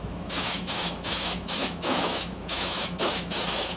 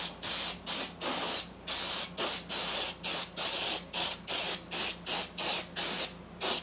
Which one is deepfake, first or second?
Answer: first